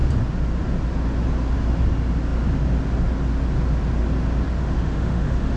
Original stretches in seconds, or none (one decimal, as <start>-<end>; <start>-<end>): 0.0-4.6